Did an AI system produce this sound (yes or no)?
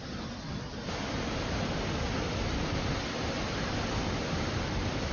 no